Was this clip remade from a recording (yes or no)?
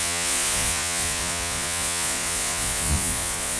yes